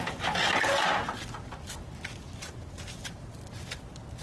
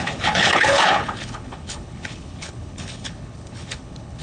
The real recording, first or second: first